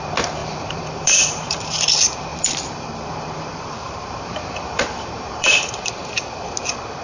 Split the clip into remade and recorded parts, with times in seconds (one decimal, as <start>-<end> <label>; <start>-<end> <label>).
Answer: 0.0-0.4 recorded; 0.4-1.9 remade; 1.9-2.3 recorded; 2.3-5.7 remade; 5.7-7.0 recorded